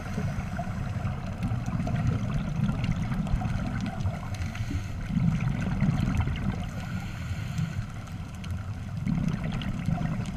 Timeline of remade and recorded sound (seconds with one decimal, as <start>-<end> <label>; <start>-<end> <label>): 0.0-10.4 recorded